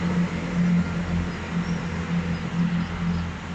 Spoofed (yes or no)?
no